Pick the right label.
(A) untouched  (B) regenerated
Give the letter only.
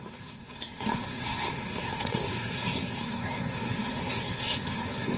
B